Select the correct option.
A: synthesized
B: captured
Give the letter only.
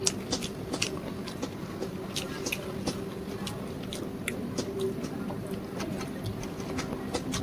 B